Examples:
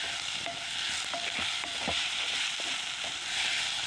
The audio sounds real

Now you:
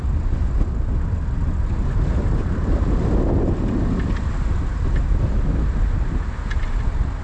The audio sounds real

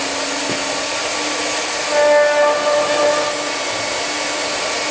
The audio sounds real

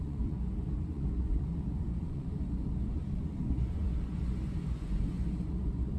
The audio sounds fake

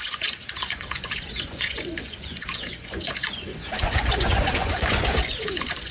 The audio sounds fake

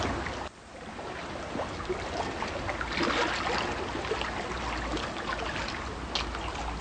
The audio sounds real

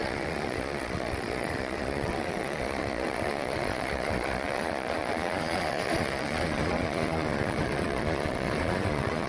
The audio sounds fake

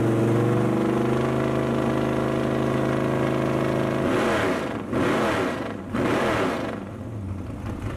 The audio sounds real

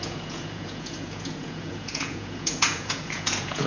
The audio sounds fake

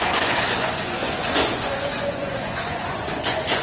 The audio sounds fake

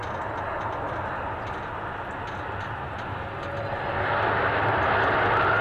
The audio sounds real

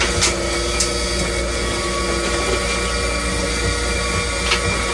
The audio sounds real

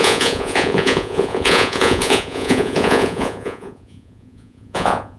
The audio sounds fake